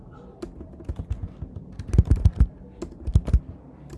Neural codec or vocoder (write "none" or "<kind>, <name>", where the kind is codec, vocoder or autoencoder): none